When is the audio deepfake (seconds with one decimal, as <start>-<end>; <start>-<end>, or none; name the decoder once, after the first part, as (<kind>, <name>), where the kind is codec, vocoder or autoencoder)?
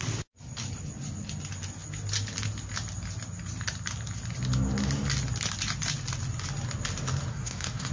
7.3-7.9 (codec, SNAC)